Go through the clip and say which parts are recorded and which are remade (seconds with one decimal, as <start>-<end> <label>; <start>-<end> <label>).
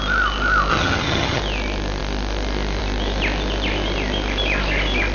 0.0-0.7 recorded; 0.7-1.4 remade; 1.4-5.1 recorded